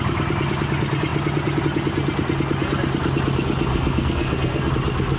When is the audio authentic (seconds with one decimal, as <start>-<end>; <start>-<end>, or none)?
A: 0.0-3.7; 4.7-5.2